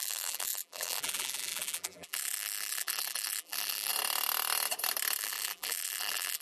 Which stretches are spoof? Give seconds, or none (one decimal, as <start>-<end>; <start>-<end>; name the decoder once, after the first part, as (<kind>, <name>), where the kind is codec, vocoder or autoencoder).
0.0-3.9 (vocoder, BigVGAN v2); 5.2-6.4